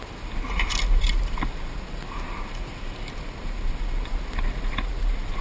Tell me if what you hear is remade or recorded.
recorded